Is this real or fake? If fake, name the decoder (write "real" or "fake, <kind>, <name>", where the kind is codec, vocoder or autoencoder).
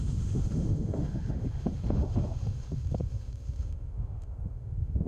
fake, autoencoder, DAC-VAE